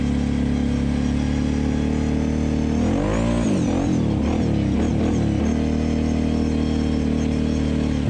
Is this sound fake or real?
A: real